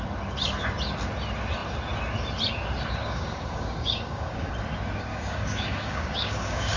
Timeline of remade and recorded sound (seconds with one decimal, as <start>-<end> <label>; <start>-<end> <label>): 0.0-3.0 recorded; 3.0-4.5 remade; 4.5-5.1 recorded; 5.1-6.8 remade